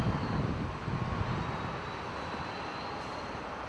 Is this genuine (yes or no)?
yes